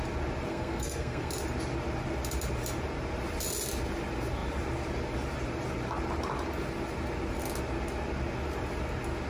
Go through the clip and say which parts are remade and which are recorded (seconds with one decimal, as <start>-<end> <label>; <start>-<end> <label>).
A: 0.0-0.5 recorded; 0.5-1.3 remade; 1.3-9.3 recorded